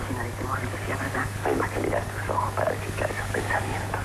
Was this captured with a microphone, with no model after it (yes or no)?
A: no